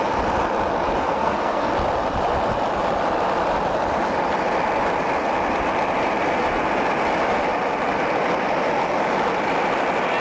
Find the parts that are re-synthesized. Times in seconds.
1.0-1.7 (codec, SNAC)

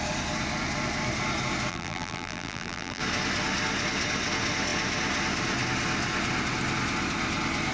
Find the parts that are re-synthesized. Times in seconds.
1.7-3.0 (vocoder, BigVGAN v2)

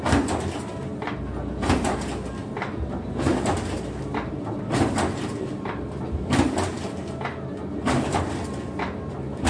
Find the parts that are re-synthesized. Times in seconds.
none

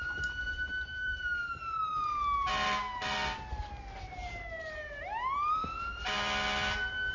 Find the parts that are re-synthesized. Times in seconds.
0.0-1.9 (vocoder, BigVGAN v2); 4.0-5.6

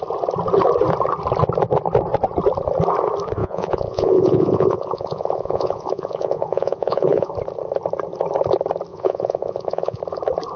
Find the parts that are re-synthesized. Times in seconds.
3.4-7.3 (vocoder, Vocos); 8.9-10.0

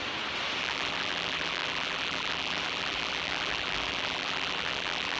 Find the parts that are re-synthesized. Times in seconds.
0.6-5.2 (vocoder, BigVGAN v2)

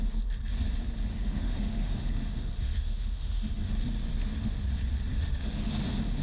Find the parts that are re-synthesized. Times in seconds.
1.1-3.7 (autoencoder, DAC-VAE); 5.1-5.7

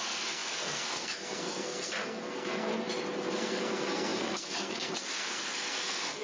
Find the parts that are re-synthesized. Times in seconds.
0.0-2.7 (codec, SNAC); 3.3-6.2